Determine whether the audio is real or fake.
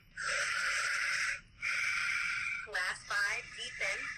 fake